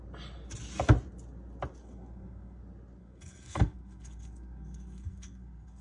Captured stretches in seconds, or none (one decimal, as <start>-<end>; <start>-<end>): 0.0-1.8; 2.6-3.0